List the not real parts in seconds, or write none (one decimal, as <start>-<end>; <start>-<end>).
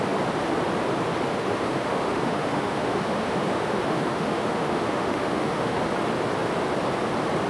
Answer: 1.3-5.8